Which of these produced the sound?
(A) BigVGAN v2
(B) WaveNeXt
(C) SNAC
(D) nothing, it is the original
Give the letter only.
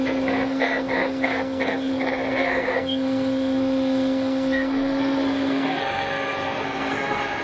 C